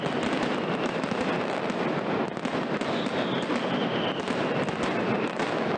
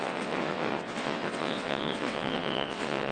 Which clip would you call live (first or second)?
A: first